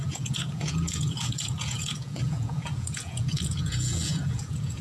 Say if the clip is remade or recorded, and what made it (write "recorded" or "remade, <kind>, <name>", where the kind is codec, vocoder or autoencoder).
remade, vocoder, Vocos